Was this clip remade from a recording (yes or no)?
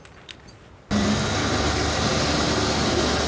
no